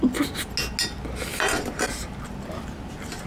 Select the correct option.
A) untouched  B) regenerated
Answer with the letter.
A